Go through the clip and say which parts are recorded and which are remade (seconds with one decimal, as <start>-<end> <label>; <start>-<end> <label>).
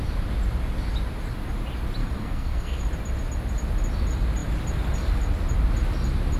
0.0-2.0 recorded; 2.0-2.8 remade; 2.8-6.4 recorded